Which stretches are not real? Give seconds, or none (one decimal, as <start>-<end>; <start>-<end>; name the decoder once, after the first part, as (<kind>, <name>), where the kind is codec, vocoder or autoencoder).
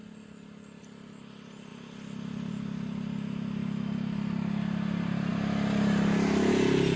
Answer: none